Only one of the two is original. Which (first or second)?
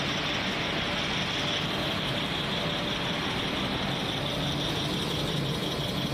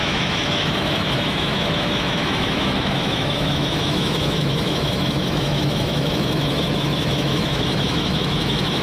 first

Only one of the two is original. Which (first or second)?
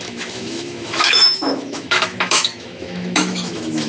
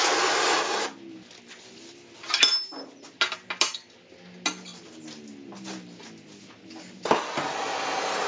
second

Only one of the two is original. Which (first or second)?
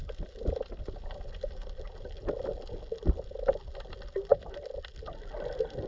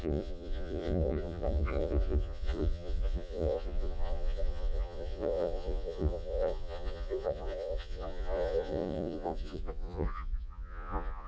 first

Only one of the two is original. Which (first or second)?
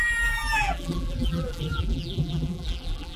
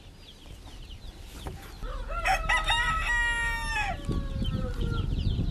second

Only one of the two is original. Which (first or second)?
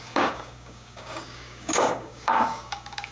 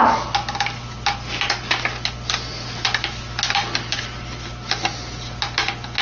second